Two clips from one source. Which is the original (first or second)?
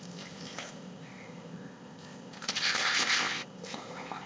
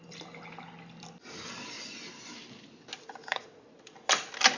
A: second